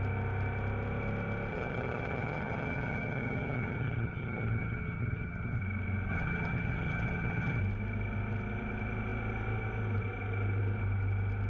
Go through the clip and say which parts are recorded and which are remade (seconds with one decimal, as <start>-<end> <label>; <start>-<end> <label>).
0.0-1.5 recorded; 1.5-5.6 remade; 5.6-6.1 recorded; 6.1-7.6 remade; 7.6-11.5 recorded